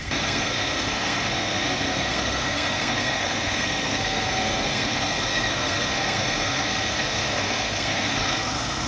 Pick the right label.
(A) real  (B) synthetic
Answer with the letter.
B